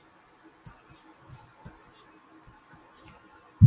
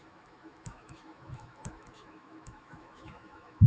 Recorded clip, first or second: first